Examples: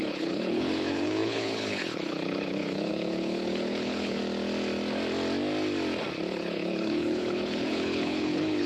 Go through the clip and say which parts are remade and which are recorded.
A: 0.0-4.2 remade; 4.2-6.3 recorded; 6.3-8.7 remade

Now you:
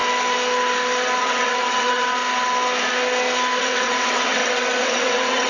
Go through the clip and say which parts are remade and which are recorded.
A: 0.0-1.2 recorded; 1.2-2.2 remade; 2.2-3.6 recorded; 3.6-5.5 remade